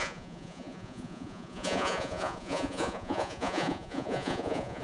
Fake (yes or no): yes